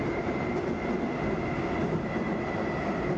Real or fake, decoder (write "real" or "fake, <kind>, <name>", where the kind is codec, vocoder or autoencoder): real